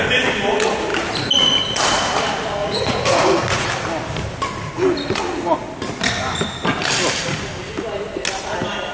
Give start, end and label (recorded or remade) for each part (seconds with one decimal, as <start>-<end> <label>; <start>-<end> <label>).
0.0-2.6 recorded; 2.6-3.7 remade; 3.7-8.9 recorded